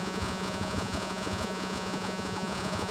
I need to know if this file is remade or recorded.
remade